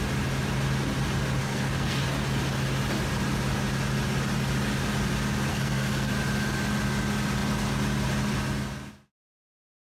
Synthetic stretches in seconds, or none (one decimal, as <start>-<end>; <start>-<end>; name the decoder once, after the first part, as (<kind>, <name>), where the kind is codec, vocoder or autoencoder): 1.4-2.0 (codec, SNAC); 5.5-6.1